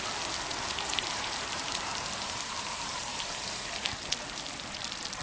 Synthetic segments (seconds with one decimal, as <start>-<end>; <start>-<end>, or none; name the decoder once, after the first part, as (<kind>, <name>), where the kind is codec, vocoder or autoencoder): 0.5-3.6 (vocoder, BigVGAN v2)